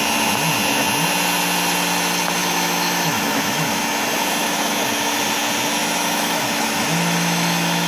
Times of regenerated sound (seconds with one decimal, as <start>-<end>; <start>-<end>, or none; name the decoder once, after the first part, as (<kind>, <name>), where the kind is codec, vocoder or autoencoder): 2.4-3.8 (autoencoder, DAC-VAE); 4.4-5.2; 5.8-7.9

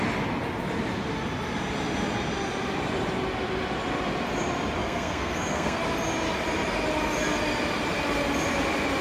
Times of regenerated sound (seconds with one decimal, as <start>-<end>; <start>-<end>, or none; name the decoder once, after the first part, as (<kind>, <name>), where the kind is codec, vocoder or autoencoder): 4.8-5.8 (codec, SNAC)

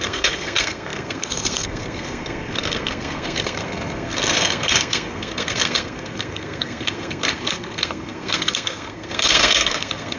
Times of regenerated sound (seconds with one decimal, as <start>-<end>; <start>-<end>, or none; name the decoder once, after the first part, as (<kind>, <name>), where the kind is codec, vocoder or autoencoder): 0.0-10.2 (codec, SNAC)

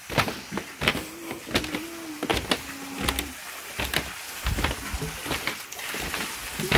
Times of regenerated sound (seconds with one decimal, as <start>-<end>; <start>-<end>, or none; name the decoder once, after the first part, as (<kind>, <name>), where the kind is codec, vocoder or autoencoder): none